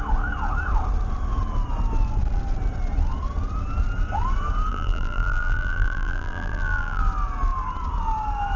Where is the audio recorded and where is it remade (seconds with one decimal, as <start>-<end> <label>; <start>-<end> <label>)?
0.0-4.7 recorded; 4.7-7.0 remade; 7.0-8.6 recorded